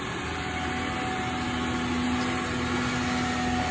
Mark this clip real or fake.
real